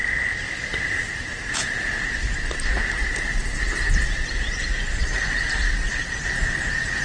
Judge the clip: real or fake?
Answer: real